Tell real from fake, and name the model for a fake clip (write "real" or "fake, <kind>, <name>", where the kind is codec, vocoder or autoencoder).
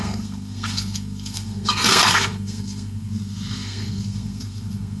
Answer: fake, codec, SNAC